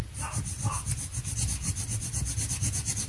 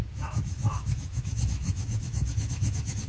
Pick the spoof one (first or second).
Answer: second